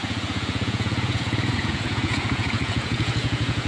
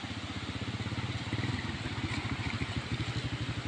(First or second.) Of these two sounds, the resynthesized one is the first